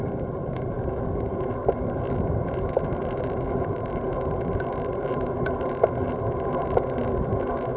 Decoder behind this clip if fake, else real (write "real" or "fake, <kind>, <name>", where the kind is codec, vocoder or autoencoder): real